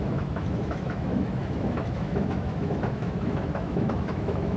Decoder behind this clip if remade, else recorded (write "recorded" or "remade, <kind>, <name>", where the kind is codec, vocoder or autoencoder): remade, autoencoder, DAC-VAE